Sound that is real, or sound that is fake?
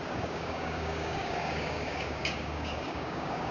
fake